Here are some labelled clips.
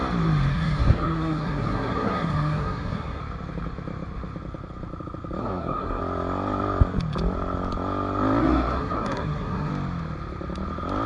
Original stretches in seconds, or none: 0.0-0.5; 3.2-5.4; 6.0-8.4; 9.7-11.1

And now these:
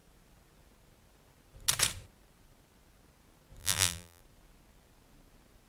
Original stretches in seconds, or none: 0.0-3.6; 4.2-5.7